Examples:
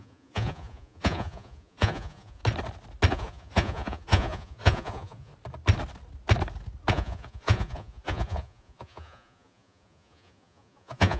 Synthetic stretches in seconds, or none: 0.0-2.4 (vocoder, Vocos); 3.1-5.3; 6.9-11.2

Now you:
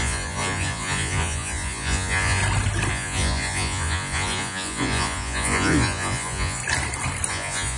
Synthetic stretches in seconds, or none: 0.0-2.4 (vocoder, Vocos); 2.9-6.6; 7.3-7.8